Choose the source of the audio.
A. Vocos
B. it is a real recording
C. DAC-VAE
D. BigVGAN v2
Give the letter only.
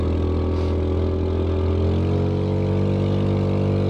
B